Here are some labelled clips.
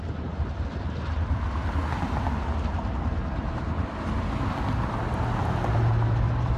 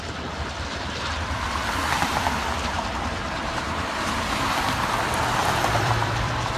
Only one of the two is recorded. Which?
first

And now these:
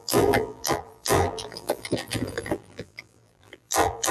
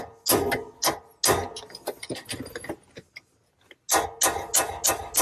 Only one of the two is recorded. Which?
second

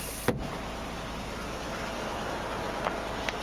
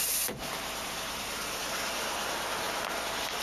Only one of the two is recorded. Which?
first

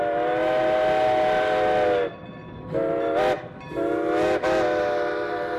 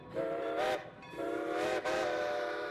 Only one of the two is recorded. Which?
first